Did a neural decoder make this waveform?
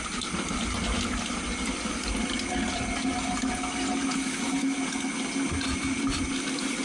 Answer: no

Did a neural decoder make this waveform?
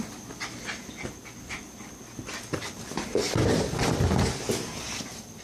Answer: no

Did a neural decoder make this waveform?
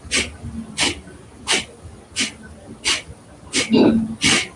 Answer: no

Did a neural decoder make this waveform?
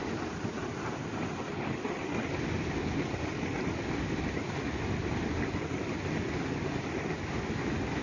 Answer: no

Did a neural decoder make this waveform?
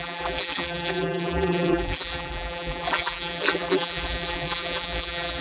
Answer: yes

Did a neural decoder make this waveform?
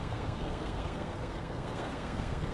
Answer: yes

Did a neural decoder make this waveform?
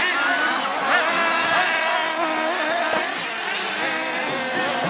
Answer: no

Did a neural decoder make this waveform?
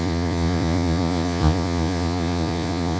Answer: yes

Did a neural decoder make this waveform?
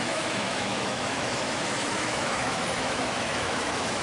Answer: yes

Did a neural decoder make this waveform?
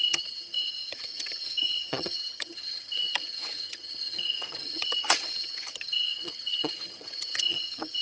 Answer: yes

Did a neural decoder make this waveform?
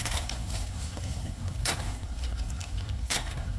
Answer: yes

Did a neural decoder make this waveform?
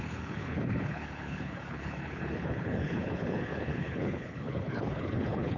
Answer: yes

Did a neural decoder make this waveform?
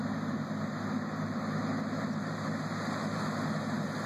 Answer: no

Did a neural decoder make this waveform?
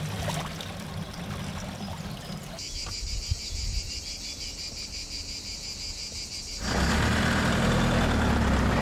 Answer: no